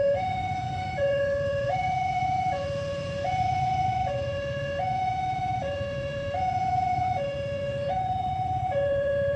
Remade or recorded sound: remade